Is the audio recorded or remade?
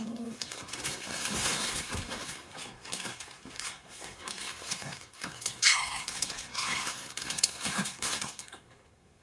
remade